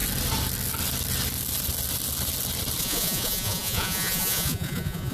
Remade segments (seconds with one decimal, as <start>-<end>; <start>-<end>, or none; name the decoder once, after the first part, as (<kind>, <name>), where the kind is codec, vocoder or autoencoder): 2.8-5.1 (vocoder, Vocos)